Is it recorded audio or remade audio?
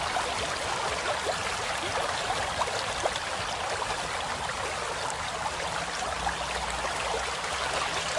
recorded